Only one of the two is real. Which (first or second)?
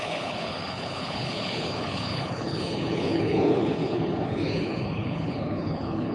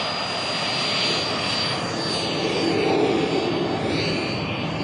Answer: second